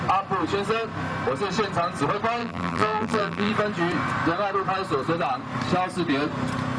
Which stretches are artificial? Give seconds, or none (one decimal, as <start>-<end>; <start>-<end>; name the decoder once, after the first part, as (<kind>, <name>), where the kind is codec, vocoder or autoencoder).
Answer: 2.4-3.5 (vocoder, BigVGAN v2)